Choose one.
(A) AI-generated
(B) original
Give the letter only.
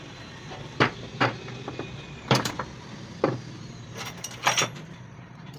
A